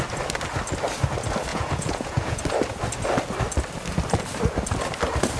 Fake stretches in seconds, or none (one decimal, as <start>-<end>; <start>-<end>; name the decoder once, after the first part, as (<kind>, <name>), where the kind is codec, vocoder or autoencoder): 1.5-2.4 (vocoder, Vocos)